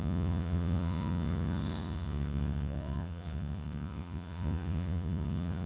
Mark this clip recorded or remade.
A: remade